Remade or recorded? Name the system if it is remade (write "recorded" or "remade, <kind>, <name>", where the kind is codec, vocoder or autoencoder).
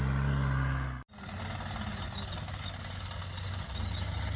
recorded